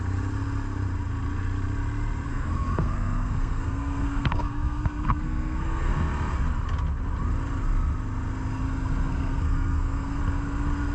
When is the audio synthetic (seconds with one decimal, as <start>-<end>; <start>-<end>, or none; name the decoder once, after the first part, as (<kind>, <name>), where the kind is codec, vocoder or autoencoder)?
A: 2.3-5.9 (codec, SNAC); 9.1-10.2